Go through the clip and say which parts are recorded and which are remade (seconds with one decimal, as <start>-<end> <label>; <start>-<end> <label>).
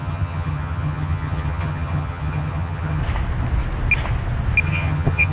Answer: 0.0-3.0 remade; 3.0-4.6 recorded; 4.6-5.3 remade